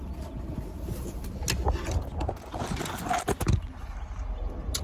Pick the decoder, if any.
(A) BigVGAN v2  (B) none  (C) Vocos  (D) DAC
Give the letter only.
B